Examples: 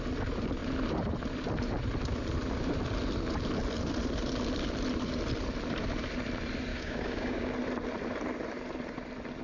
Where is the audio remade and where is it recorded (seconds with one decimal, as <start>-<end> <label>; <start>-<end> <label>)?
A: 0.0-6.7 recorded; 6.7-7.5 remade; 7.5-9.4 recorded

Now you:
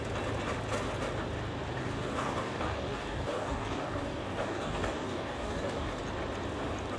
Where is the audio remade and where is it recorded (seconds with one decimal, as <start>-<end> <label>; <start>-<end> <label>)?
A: 0.0-1.8 recorded; 1.8-6.0 remade; 6.0-7.0 recorded

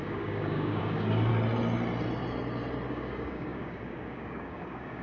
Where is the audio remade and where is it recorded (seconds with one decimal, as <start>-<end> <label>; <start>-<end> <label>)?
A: 0.0-1.3 remade; 1.3-2.9 recorded; 2.9-5.0 remade

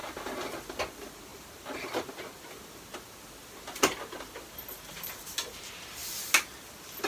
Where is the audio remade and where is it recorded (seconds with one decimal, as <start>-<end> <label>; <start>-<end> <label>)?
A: 0.0-7.1 recorded

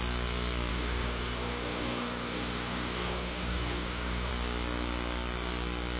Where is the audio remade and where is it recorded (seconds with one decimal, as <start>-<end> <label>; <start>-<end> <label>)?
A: 0.0-0.7 recorded; 0.7-4.3 remade; 4.3-6.0 recorded

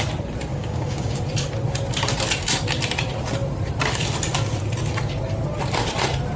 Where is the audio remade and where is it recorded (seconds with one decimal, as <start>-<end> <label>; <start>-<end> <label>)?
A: 0.0-0.5 recorded; 0.5-1.2 remade; 1.2-6.4 recorded

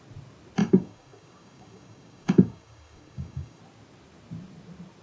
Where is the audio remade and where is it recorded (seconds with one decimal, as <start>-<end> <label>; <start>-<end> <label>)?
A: 0.0-0.6 recorded; 0.6-3.6 remade; 3.6-5.0 recorded